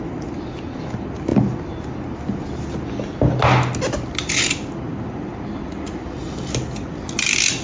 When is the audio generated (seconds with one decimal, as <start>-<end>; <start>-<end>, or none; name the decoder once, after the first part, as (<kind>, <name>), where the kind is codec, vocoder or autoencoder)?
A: none